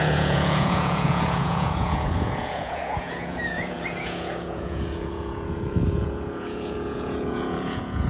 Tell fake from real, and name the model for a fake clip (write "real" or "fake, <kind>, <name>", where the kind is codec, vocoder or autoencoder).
fake, vocoder, Vocos